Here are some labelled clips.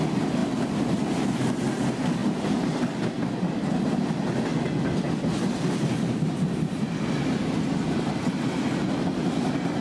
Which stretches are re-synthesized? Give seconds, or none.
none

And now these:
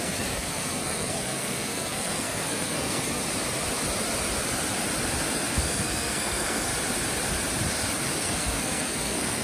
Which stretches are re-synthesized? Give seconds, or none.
0.0-3.2; 5.5-6.7; 8.2-9.4

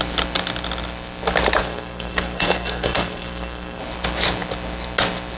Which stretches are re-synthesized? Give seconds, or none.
1.6-3.8

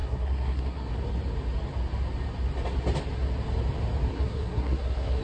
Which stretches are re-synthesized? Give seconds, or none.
0.0-0.9; 4.1-5.2